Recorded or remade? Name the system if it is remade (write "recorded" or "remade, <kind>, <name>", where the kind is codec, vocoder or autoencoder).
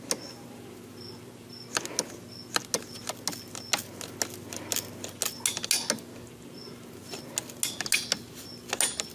recorded